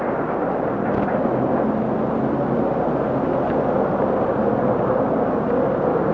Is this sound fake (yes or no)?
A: no